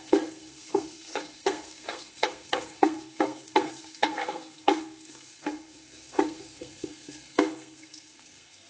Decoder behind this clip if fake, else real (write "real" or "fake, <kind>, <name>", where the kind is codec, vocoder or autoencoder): fake, codec, SNAC